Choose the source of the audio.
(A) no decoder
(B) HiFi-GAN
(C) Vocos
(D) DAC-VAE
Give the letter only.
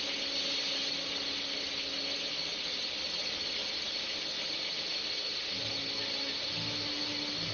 A